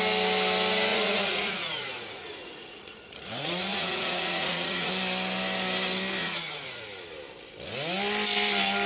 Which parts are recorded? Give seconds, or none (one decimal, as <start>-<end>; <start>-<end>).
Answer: 0.0-0.9; 4.9-6.2; 6.8-8.9